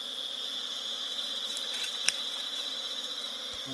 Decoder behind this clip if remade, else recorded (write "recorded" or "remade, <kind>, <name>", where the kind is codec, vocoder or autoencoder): recorded